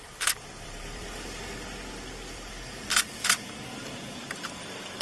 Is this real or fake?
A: fake